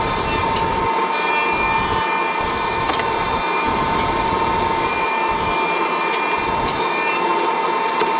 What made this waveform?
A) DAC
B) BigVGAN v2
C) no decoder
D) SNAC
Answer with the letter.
C